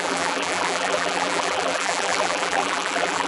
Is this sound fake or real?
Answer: fake